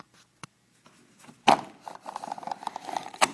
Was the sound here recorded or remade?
remade